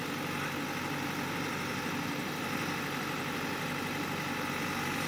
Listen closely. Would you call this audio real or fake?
real